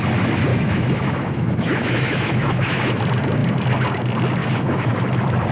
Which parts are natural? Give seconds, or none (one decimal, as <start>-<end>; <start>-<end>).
0.0-0.5; 3.0-4.4; 4.9-5.5

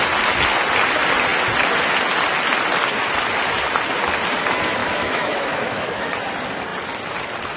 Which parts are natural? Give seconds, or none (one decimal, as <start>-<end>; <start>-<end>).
0.0-4.8; 6.1-7.6

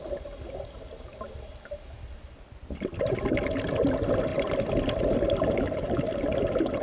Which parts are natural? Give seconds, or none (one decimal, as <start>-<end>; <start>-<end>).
0.0-6.8